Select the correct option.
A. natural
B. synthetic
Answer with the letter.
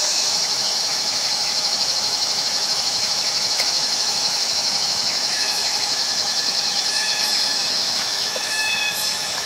B